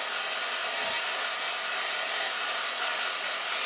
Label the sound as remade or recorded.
recorded